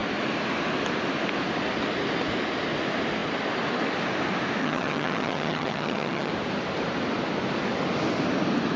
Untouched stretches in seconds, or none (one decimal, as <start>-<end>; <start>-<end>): 0.0-4.6; 6.3-8.8